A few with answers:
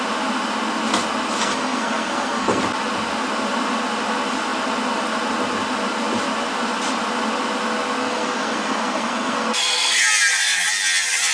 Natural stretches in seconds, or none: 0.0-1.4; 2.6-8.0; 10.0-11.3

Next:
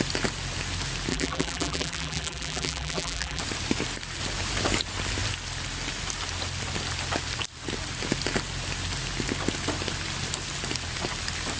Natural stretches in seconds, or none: 0.0-1.1; 3.4-11.6

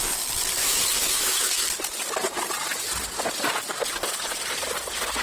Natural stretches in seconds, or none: 0.0-0.6; 1.6-5.2

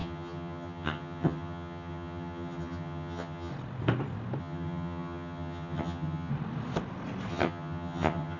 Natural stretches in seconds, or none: 3.5-4.4; 6.3-7.3

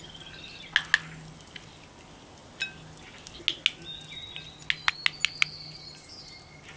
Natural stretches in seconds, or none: 0.0-6.8

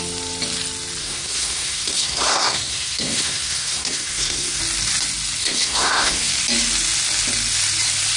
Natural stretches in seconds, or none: 0.0-1.0; 4.6-5.4; 6.3-8.2